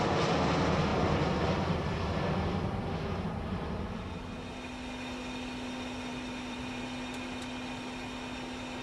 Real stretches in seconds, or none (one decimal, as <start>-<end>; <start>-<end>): 0.0-0.9; 3.9-6.1; 6.8-8.8